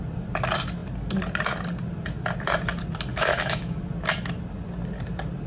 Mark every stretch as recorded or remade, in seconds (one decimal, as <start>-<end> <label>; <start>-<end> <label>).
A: 0.0-3.1 recorded; 3.1-3.8 remade; 3.8-5.5 recorded